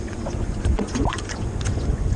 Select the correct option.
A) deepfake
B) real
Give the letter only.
A